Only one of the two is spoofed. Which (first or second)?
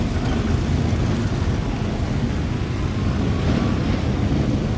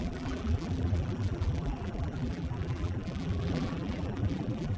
second